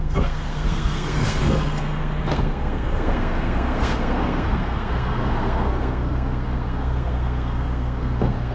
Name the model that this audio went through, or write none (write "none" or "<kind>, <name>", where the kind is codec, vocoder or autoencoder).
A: codec, SNAC